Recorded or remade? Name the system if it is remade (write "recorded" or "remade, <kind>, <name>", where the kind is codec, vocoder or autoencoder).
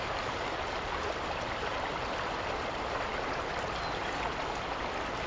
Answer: recorded